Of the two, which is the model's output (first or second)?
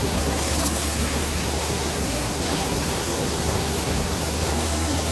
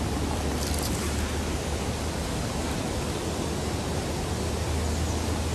first